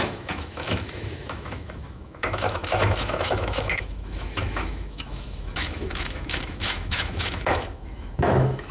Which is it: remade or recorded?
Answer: remade